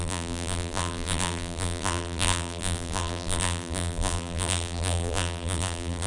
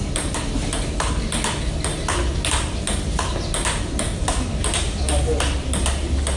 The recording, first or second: second